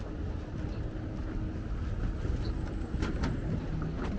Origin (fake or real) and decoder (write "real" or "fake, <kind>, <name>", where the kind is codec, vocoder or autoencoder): real